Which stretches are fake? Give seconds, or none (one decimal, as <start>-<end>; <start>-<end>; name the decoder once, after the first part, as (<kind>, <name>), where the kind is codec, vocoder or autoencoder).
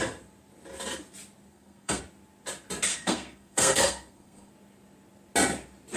1.5-2.0 (codec, SNAC); 2.9-4.5